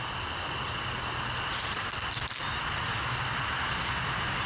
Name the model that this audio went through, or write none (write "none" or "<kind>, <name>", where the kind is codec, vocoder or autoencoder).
none